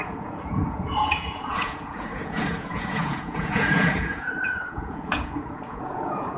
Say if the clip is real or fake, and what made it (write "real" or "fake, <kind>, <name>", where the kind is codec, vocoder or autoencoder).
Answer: fake, vocoder, Vocos